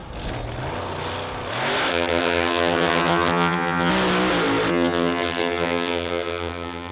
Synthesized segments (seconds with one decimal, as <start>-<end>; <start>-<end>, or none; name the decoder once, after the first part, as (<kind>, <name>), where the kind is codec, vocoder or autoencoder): 1.9-3.9 (vocoder, HiFi-GAN); 4.7-6.9